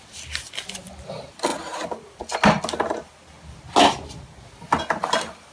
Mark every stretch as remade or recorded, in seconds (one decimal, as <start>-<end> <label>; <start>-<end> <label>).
0.0-5.5 recorded